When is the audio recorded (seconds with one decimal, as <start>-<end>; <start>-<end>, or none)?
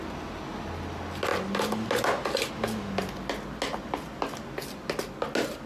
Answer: 0.0-5.7